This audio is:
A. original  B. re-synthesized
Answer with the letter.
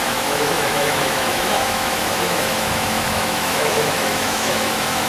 B